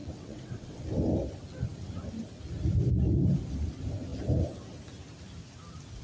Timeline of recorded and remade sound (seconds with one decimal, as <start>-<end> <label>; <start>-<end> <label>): 0.0-0.8 remade; 0.8-6.0 recorded